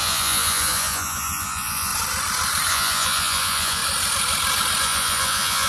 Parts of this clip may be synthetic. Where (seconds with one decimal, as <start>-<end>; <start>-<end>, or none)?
0.0-1.9; 2.7-3.8; 4.8-5.7